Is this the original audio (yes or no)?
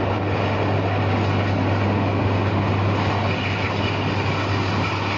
yes